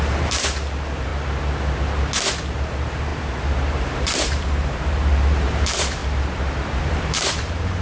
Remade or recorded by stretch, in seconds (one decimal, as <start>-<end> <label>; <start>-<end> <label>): 0.0-1.1 remade; 1.1-2.4 recorded; 2.4-6.0 remade; 6.0-6.8 recorded; 6.8-7.8 remade